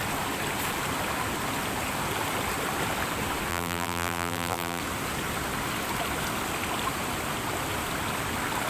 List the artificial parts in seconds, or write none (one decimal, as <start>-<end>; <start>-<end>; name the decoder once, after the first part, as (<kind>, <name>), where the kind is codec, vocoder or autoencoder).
3.5-4.8 (vocoder, BigVGAN v2)